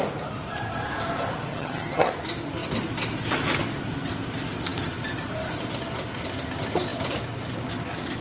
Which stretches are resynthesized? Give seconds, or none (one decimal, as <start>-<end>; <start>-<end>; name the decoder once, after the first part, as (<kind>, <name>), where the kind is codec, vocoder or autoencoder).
1.5-2.1 (vocoder, HiFi-GAN)